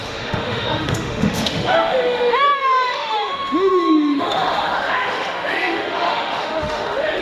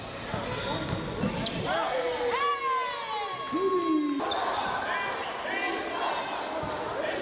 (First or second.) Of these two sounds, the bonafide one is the second